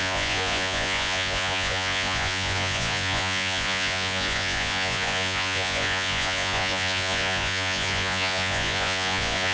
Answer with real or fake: fake